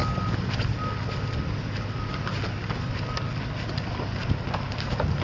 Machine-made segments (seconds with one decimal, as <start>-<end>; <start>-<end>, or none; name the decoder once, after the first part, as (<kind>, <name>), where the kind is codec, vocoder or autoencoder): none